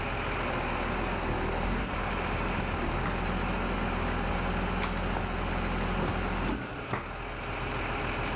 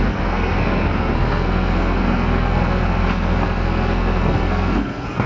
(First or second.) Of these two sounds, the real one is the first